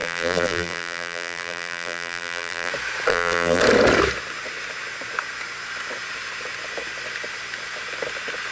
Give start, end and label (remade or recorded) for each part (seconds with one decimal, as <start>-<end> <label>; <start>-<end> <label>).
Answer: 0.0-2.7 remade; 2.7-3.1 recorded; 3.1-3.6 remade; 3.6-8.5 recorded